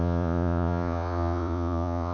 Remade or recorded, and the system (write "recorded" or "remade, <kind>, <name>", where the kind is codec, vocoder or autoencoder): remade, vocoder, Vocos